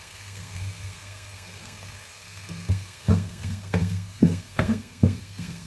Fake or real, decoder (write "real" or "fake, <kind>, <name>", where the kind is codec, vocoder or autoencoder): fake, codec, SNAC